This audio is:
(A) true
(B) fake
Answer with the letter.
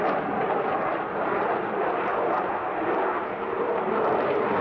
A